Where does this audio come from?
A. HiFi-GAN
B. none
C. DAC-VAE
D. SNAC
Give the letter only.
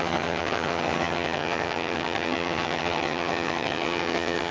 A